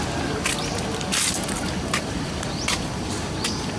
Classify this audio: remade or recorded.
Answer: recorded